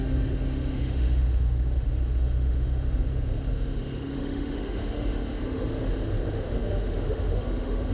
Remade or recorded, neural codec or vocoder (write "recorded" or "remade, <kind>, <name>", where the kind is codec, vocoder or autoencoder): remade, autoencoder, DAC-VAE